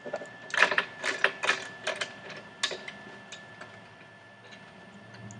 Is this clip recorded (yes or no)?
yes